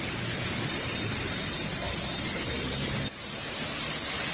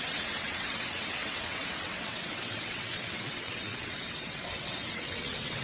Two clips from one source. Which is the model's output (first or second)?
second